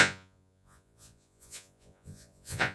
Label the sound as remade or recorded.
remade